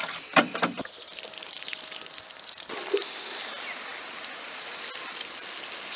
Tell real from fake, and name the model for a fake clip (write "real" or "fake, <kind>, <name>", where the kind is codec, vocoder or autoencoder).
real